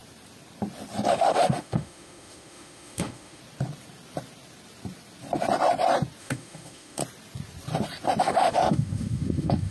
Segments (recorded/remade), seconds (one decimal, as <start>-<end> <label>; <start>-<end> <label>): 0.0-1.1 recorded; 1.1-3.4 remade; 3.4-6.2 recorded; 6.2-7.0 remade; 7.0-8.2 recorded; 8.2-9.7 remade